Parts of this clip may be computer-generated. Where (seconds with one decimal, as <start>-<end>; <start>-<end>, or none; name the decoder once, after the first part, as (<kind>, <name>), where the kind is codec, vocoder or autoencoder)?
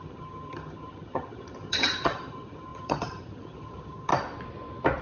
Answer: 0.0-4.1 (vocoder, HiFi-GAN)